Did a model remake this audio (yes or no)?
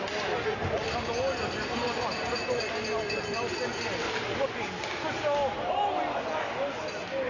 no